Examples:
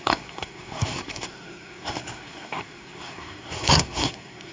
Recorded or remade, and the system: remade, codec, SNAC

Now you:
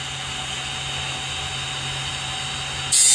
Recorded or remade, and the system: recorded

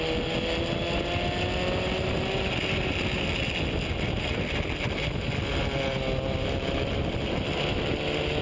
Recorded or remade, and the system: recorded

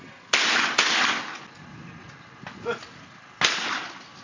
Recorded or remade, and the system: recorded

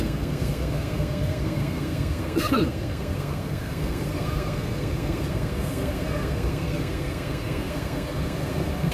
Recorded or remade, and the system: remade, codec, SNAC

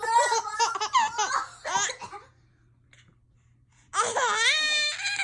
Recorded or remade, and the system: recorded